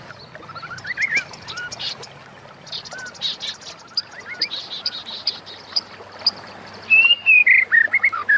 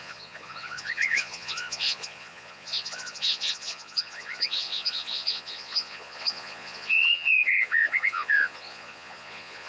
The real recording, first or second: first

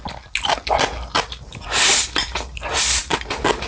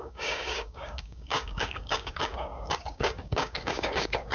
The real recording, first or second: first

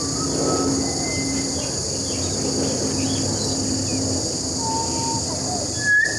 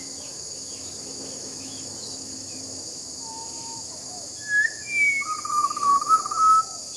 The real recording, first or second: first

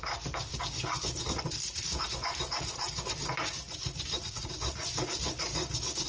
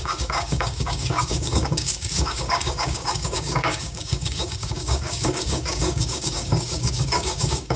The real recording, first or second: first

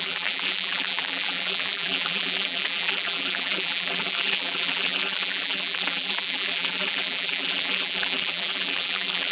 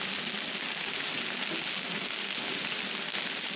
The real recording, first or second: second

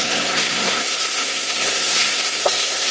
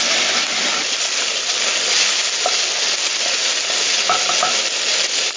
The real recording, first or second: second